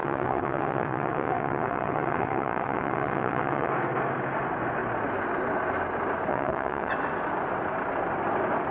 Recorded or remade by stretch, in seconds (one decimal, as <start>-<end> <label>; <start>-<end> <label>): 0.0-3.7 remade; 3.7-6.3 recorded; 6.3-6.9 remade; 6.9-8.7 recorded